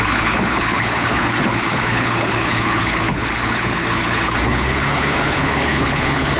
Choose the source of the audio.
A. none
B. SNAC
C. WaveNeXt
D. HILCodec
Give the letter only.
D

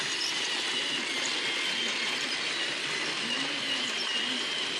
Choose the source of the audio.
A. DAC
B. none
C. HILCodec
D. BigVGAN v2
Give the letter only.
B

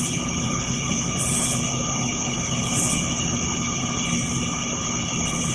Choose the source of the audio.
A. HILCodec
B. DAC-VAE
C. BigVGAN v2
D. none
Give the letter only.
A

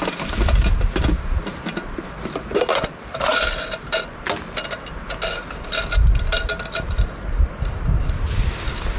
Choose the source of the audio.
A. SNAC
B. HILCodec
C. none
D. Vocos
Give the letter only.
C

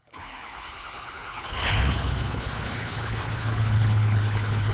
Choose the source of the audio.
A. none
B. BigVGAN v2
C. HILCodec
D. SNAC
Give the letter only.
C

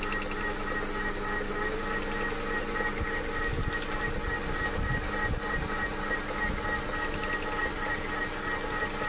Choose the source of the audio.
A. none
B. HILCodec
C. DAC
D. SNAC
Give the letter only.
A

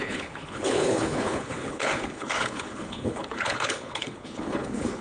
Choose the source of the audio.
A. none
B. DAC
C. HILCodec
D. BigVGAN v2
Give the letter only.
C